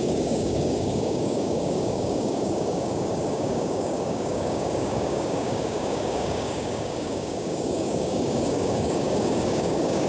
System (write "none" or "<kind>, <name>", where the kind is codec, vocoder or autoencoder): codec, DAC